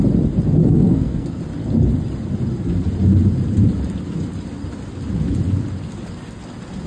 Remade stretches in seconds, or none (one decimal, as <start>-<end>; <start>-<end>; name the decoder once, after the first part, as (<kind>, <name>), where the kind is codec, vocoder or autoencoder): 0.6-1.4 (codec, SNAC)